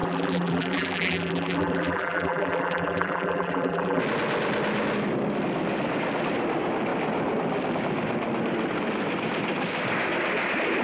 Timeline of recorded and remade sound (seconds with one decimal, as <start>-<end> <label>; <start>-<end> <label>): 0.0-4.0 remade; 4.0-10.8 recorded